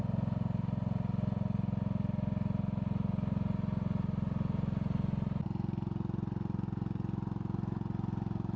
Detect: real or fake real